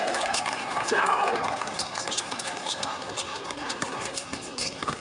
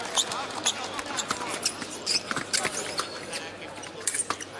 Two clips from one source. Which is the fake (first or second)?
first